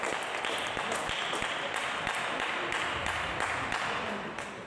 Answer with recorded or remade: recorded